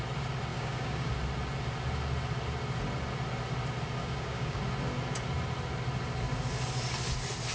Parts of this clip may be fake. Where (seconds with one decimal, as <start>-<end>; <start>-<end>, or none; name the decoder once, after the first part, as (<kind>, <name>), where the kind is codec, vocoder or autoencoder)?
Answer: 0.5-1.1 (codec, DAC); 4.0-4.6